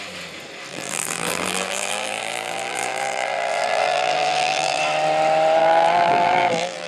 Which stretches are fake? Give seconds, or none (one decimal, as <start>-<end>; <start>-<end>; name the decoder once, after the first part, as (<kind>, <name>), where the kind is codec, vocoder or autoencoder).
0.7-4.8 (vocoder, BigVGAN v2); 5.6-6.9